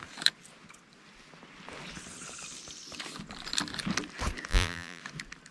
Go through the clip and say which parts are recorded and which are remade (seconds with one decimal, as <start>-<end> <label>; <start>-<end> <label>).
0.0-4.5 recorded; 4.5-5.0 remade; 5.0-5.5 recorded